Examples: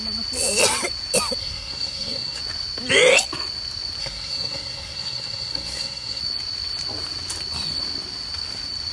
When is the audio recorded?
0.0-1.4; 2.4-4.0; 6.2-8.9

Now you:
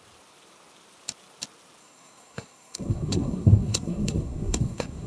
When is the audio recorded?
0.0-1.8

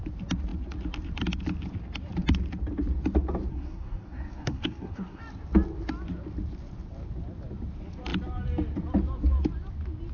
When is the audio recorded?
0.0-3.5; 5.2-10.1